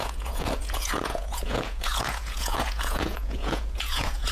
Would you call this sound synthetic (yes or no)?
yes